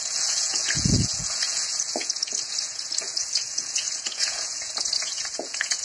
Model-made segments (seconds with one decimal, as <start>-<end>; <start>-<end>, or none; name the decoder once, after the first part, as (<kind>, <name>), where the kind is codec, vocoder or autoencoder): 0.0-5.8 (vocoder, Vocos)